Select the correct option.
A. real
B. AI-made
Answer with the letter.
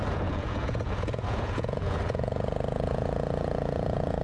B